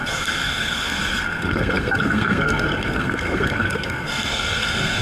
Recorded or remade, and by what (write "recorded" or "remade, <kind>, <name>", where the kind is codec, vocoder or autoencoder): remade, codec, SNAC